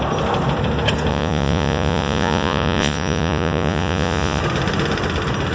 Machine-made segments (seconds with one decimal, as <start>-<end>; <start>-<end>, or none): 1.1-4.4

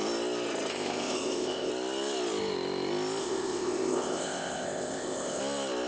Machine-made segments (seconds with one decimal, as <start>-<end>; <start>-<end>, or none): 0.7-1.7; 3.2-5.4

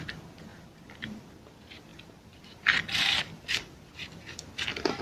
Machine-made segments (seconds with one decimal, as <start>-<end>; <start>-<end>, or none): 0.5-1.2; 1.9-3.2

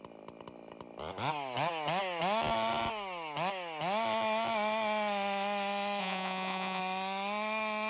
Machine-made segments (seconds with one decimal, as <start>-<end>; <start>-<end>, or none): 6.0-6.8

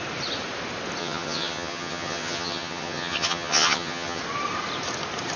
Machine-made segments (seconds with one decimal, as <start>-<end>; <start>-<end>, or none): 1.0-4.2

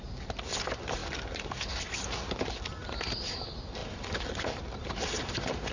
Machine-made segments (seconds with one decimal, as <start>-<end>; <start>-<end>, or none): none

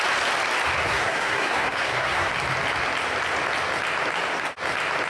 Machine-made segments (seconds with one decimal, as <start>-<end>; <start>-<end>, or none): 0.8-2.3

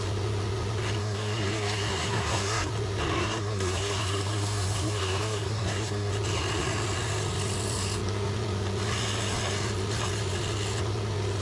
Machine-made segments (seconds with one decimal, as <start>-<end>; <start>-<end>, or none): 1.0-2.7; 3.2-6.1